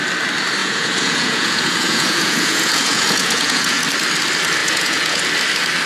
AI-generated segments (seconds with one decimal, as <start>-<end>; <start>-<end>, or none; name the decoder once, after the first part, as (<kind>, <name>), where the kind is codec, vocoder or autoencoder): 0.6-3.8 (vocoder, Vocos); 4.6-5.2